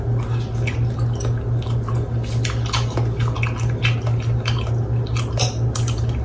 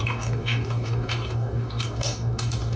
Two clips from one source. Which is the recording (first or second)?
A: first